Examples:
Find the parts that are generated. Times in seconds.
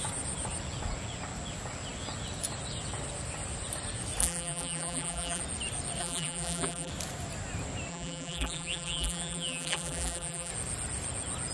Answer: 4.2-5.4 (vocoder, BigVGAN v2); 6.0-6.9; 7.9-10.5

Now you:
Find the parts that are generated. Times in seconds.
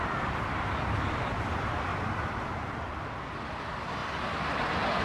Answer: none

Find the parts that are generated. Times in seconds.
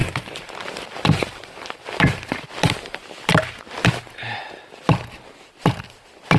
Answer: 0.0-3.4 (vocoder, BigVGAN v2)